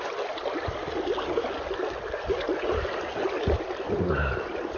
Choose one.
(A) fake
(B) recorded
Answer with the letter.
B